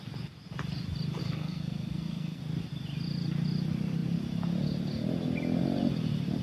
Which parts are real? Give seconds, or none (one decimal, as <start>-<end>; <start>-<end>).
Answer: 0.0-1.2; 2.4-6.4